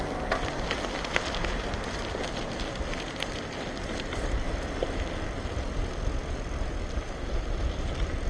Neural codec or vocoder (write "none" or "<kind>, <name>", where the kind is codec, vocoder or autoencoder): none